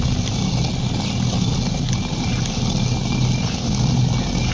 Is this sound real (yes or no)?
yes